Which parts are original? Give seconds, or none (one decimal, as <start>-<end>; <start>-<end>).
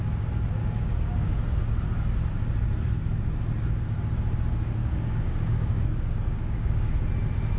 0.0-0.6; 1.4-4.8; 6.9-7.6